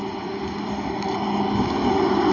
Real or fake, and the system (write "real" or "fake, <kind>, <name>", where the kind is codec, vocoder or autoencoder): real